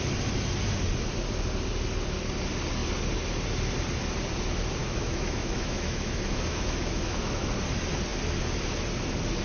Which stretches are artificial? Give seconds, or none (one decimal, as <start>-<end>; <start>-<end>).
4.8-7.5